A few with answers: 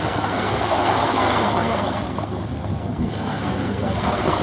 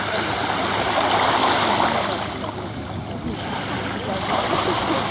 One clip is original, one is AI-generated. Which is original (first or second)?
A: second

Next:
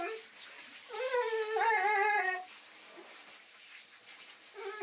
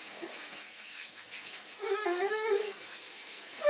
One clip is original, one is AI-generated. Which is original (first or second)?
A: first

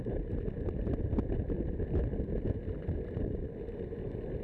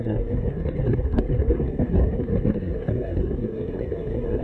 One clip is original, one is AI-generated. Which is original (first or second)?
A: first